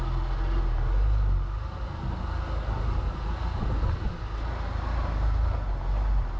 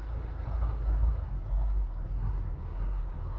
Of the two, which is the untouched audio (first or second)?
first